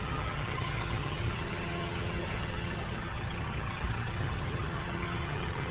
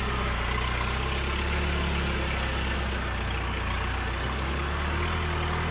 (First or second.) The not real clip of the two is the first